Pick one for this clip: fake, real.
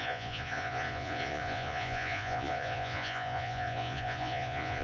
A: fake